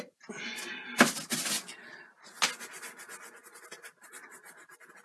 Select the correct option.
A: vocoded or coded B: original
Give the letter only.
B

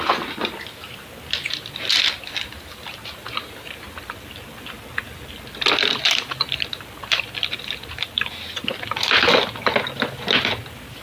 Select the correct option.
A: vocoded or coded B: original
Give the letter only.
B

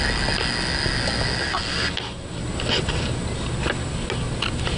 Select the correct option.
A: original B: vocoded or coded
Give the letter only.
A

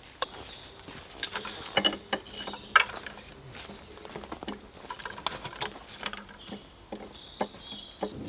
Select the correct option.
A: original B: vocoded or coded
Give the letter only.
A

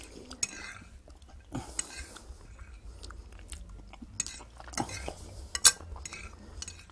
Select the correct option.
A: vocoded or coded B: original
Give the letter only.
B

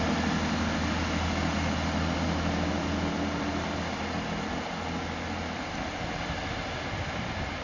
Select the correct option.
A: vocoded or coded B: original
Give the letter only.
B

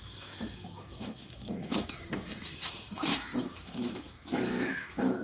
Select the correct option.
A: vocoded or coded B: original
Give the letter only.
A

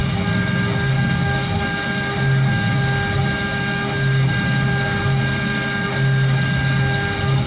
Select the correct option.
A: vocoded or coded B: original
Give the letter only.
B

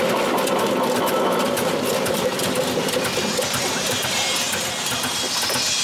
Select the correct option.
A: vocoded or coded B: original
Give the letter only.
B